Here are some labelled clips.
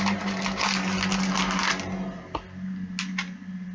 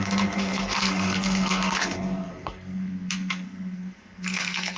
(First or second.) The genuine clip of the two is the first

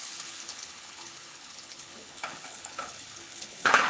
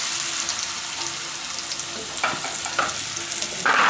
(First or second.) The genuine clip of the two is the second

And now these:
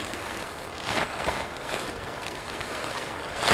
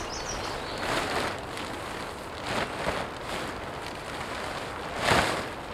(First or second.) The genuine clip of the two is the second